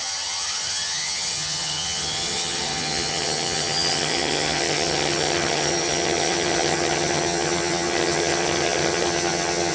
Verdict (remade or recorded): remade